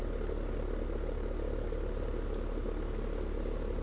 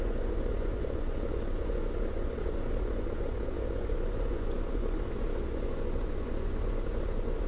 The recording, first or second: first